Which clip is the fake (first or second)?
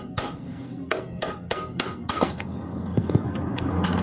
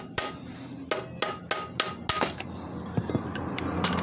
first